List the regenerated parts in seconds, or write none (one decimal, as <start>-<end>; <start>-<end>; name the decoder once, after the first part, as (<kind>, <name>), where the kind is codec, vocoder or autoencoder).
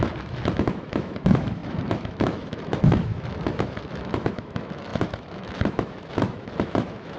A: 0.0-7.2 (autoencoder, DAC-VAE)